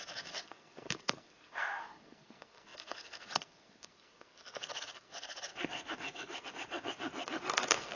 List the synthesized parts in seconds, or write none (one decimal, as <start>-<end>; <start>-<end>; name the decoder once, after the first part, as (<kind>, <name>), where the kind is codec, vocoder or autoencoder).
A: 0.0-8.0 (codec, SNAC)